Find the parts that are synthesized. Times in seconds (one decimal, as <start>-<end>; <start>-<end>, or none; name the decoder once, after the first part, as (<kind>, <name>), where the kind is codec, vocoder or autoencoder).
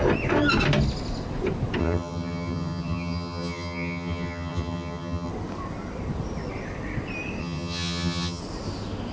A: 1.8-5.3 (vocoder, HiFi-GAN); 7.4-8.4